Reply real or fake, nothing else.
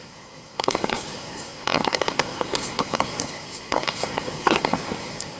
fake